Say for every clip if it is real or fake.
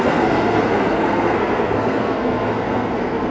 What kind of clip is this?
fake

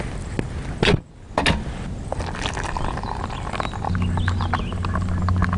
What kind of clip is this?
real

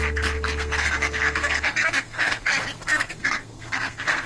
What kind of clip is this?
fake